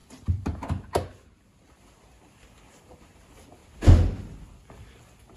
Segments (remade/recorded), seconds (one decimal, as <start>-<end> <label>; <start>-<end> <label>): 0.0-0.7 remade; 0.7-5.4 recorded